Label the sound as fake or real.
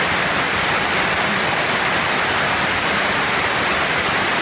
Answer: fake